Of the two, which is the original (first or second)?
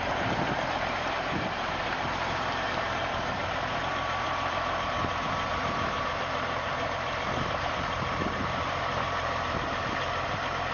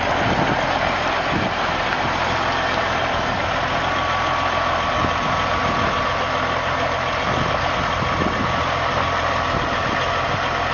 second